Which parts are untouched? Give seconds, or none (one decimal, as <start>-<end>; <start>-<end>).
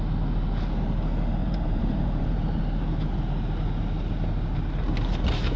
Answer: 0.0-1.4; 2.6-5.6